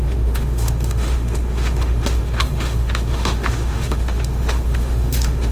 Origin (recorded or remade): remade